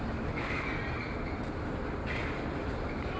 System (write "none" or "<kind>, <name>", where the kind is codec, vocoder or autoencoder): none